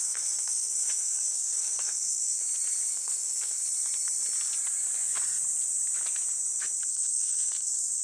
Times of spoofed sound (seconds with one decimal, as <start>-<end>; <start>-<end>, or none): 0.0-2.4; 2.9-3.6; 6.9-8.0